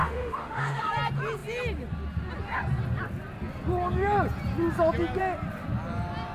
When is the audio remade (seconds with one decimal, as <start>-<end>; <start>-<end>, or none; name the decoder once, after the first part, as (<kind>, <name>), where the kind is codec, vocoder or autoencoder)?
0.0-0.9 (autoencoder, DAC-VAE)